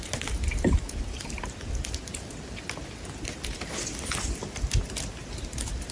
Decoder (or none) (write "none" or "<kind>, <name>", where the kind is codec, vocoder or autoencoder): none